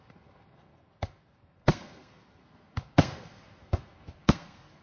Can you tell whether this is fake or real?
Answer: fake